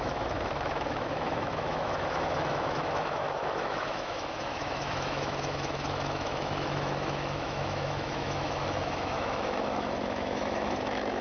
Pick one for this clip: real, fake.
fake